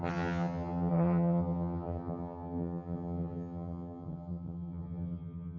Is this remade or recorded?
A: remade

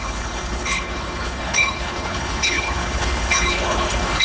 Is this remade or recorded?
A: remade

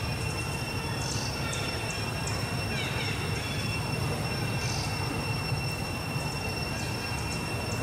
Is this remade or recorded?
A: recorded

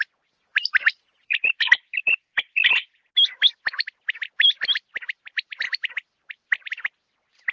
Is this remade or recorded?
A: recorded